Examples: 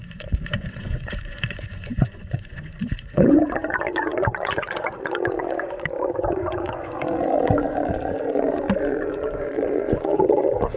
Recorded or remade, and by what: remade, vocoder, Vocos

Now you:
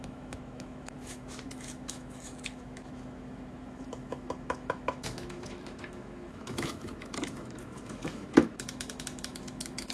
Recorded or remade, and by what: remade, autoencoder, DAC-VAE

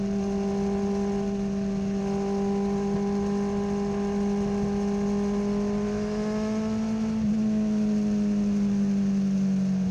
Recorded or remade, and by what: recorded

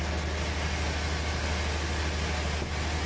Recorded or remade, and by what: recorded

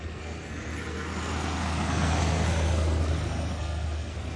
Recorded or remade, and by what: remade, codec, SNAC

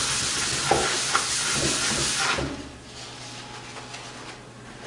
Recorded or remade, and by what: recorded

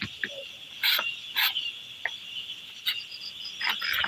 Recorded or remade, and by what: recorded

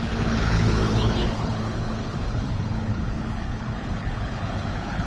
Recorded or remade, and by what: remade, codec, HILCodec